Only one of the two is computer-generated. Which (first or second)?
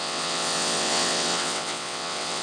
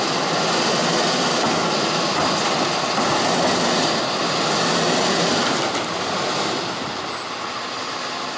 first